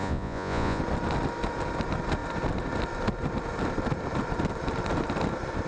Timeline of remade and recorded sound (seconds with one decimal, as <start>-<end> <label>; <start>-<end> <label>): 0.0-0.8 remade; 0.8-5.7 recorded